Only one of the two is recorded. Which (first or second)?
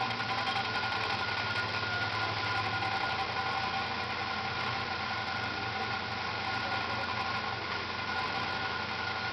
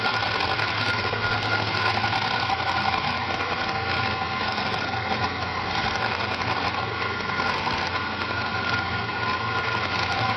first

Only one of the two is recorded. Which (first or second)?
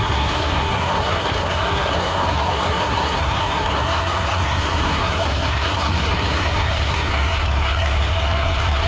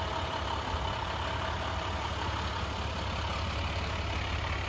second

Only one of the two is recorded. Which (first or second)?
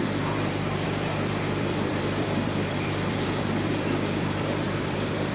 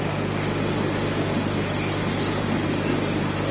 second